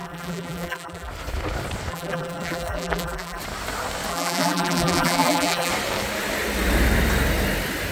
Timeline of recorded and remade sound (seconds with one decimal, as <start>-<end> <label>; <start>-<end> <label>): 0.0-1.1 remade; 1.1-1.9 recorded; 1.9-3.4 remade; 3.4-4.1 recorded; 4.1-5.7 remade; 5.7-7.9 recorded